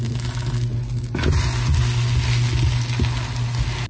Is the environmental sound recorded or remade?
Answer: recorded